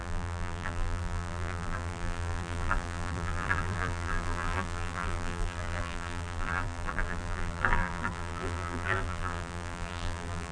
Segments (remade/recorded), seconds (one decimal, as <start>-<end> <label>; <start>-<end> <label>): 0.0-10.5 remade